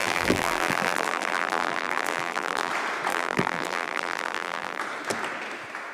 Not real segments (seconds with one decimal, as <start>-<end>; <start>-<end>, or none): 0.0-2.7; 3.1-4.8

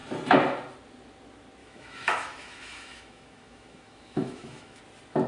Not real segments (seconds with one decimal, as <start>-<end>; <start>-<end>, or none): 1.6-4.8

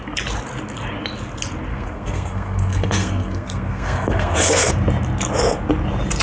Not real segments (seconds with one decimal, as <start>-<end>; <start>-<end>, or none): 1.7-4.7